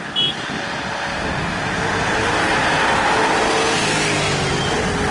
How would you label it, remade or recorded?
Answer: recorded